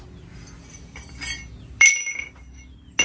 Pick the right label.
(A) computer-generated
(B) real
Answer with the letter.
B